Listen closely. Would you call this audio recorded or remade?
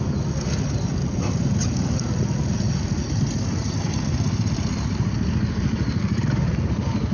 recorded